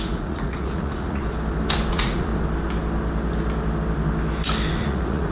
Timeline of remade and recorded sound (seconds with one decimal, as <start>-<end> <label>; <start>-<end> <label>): 0.0-1.2 remade; 1.2-1.9 recorded; 1.9-2.3 remade; 2.3-4.7 recorded; 4.7-5.3 remade